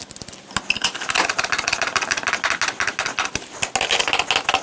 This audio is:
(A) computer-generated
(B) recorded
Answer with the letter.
B